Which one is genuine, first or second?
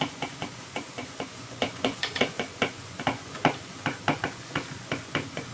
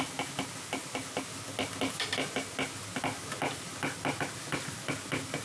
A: second